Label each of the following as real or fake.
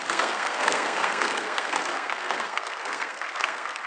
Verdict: fake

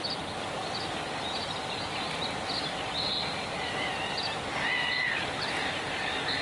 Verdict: real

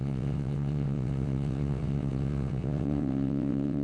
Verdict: fake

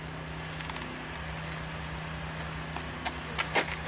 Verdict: real